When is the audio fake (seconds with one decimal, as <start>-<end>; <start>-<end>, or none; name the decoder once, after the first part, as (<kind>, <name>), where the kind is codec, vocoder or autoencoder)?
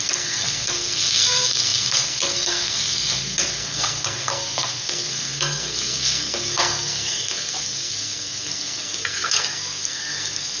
0.0-10.6 (codec, SNAC)